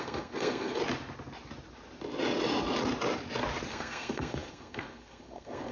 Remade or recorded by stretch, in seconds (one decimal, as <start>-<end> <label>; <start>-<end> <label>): 0.0-0.8 remade; 0.8-3.7 recorded; 3.7-5.7 remade